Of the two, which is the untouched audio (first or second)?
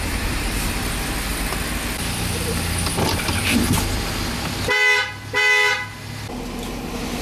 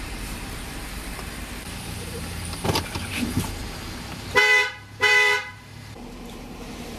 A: first